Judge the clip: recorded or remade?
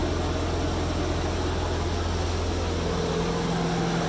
recorded